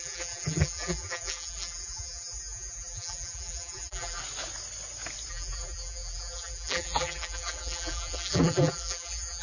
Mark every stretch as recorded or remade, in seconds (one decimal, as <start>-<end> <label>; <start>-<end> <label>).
0.0-4.2 remade; 4.2-5.3 recorded; 5.3-9.4 remade